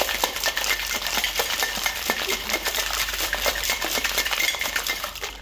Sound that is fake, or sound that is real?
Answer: fake